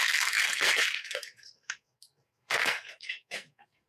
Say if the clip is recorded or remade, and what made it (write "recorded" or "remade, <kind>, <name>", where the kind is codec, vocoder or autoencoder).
remade, codec, SNAC